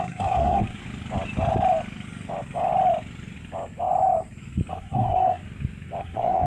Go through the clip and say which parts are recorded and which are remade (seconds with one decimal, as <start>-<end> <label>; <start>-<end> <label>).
0.0-0.8 remade; 0.8-4.7 recorded; 4.7-5.4 remade; 5.4-6.0 recorded; 6.0-6.5 remade